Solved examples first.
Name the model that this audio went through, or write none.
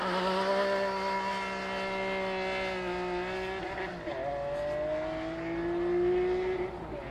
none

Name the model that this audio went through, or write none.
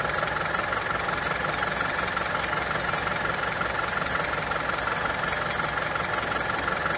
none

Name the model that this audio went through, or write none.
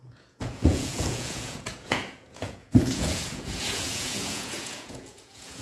vocoder, Vocos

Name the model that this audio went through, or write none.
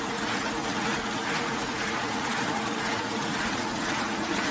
vocoder, Vocos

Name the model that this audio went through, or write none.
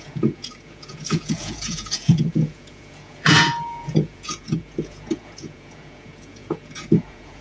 vocoder, Vocos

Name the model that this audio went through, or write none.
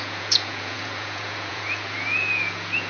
vocoder, Vocos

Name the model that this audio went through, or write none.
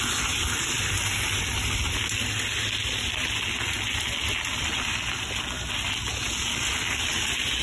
none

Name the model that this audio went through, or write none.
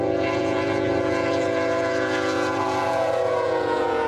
vocoder, Vocos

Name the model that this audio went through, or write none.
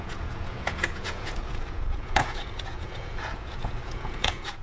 vocoder, Vocos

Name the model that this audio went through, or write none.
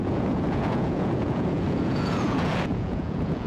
vocoder, Vocos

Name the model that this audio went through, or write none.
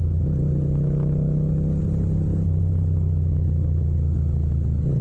none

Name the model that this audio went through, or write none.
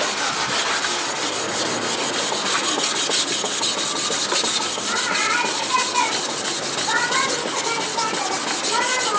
none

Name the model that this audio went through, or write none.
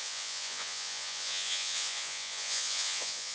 vocoder, Vocos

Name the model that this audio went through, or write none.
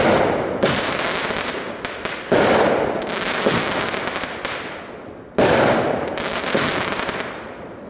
none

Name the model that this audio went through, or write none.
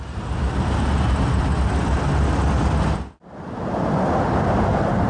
none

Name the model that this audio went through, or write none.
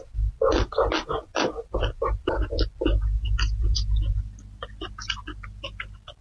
none